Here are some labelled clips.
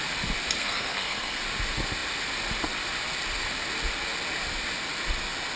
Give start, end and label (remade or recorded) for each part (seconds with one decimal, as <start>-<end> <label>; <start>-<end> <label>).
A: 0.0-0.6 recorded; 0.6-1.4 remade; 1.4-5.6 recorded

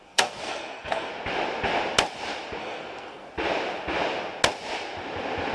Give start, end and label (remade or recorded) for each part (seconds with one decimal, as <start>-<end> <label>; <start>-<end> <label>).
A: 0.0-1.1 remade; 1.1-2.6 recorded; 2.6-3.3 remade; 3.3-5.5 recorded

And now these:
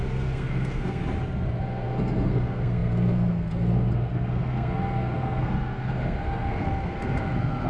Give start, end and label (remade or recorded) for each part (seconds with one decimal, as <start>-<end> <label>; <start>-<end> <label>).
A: 0.0-1.0 remade; 1.0-1.6 recorded; 1.6-7.7 remade